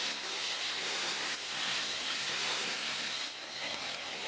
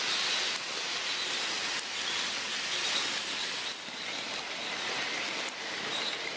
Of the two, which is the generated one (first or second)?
first